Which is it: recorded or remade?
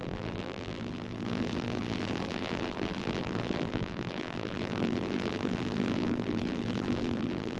remade